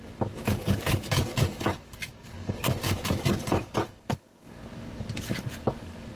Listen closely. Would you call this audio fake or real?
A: fake